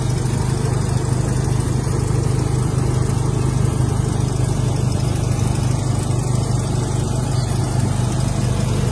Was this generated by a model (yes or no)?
no